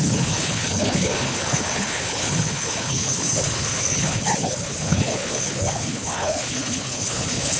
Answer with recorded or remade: remade